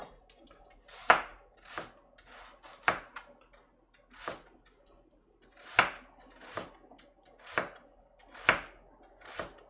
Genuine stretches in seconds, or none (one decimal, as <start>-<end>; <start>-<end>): 0.0-9.7